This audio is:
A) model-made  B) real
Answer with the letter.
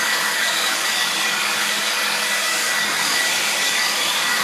A